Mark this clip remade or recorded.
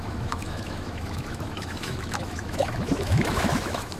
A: remade